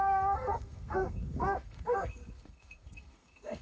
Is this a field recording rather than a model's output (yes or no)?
no